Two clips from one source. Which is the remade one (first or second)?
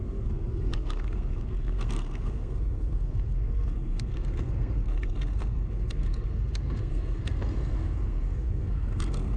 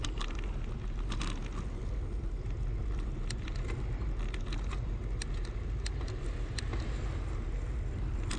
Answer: first